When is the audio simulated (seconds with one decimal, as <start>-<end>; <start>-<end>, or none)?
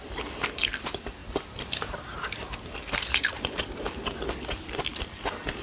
none